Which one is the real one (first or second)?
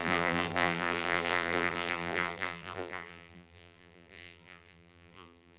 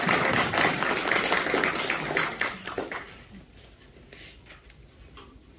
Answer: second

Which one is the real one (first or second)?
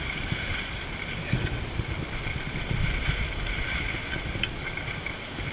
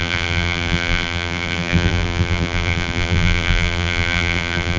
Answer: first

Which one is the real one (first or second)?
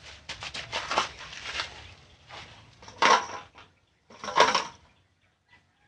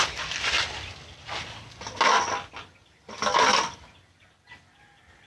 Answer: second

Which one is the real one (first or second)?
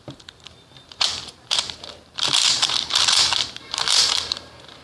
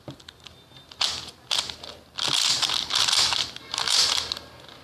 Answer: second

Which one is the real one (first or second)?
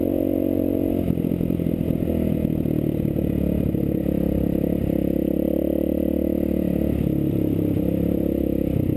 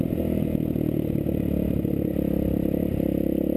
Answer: first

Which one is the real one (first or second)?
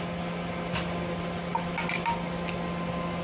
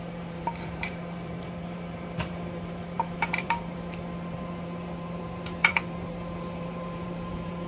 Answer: first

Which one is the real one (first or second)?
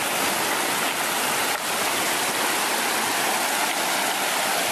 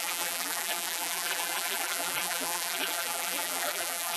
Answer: first